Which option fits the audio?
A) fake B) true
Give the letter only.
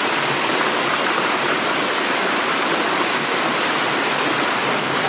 B